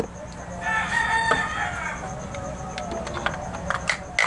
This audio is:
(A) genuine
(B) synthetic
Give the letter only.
A